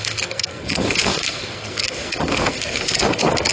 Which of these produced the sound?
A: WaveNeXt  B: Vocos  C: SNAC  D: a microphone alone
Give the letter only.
C